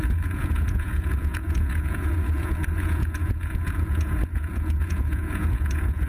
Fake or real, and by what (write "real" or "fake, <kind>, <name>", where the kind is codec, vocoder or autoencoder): fake, vocoder, Vocos